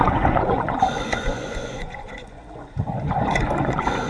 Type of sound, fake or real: fake